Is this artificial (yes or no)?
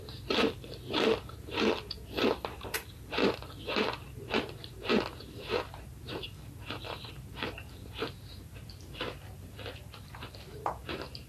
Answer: yes